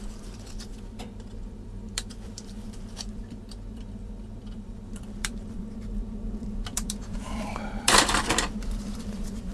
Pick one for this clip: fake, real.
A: fake